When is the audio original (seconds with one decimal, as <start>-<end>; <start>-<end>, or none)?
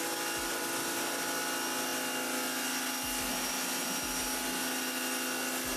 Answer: 0.0-5.8